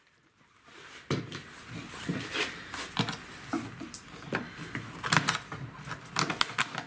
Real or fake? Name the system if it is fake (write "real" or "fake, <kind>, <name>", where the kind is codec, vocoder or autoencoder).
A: real